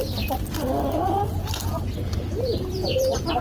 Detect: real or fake real